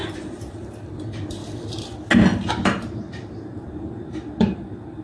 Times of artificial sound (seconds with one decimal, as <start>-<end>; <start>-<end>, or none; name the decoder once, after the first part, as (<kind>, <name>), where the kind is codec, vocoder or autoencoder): 0.0-1.4 (vocoder, BigVGAN v2); 2.5-5.0